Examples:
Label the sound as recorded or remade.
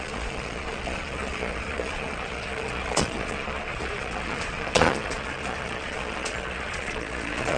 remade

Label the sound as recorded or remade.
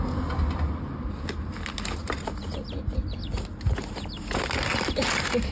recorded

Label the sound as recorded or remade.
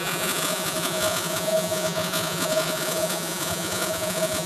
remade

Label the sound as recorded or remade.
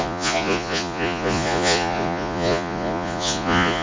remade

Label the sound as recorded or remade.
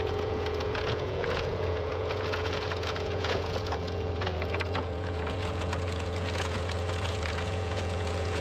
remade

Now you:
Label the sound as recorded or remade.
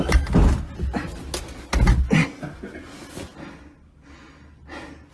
recorded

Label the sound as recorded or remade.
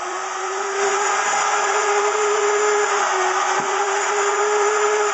remade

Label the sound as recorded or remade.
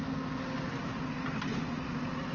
recorded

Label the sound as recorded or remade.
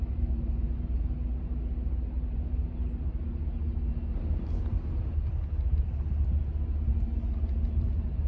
recorded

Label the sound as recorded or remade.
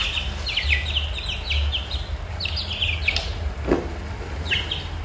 recorded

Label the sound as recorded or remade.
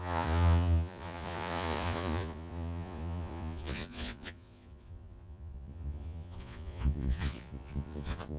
remade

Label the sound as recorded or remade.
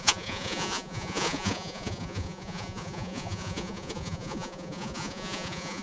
remade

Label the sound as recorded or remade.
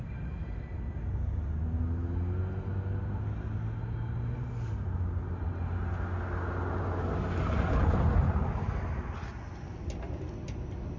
recorded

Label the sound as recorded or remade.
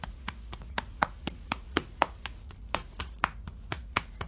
remade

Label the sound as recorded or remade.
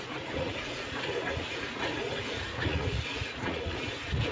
remade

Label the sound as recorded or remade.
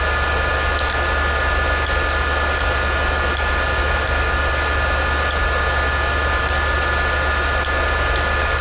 recorded